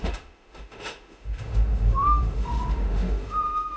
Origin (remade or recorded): remade